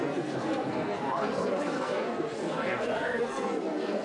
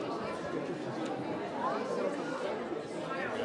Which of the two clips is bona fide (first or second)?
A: second